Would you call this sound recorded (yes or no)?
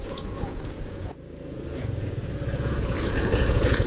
no